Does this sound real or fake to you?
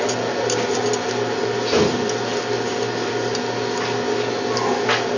real